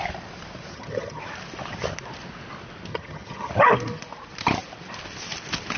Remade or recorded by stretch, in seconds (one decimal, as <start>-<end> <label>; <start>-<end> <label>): 0.0-0.7 recorded; 0.7-1.2 remade; 1.2-2.9 recorded; 2.9-3.5 remade; 3.5-5.8 recorded